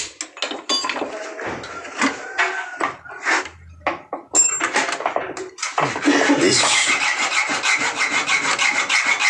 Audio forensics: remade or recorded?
recorded